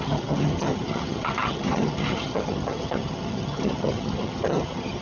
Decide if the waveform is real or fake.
fake